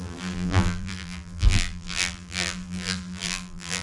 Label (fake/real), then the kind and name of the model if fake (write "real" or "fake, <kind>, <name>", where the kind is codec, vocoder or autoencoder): fake, vocoder, BigVGAN v2